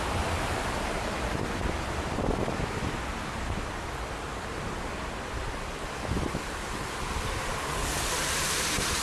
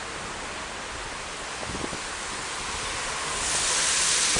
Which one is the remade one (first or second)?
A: first